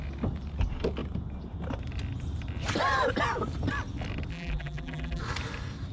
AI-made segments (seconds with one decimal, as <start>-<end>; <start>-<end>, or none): 4.3-5.2